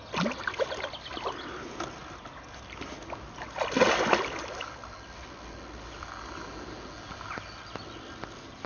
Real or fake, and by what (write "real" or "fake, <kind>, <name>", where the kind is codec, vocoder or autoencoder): real